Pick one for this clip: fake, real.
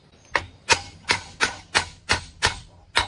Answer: real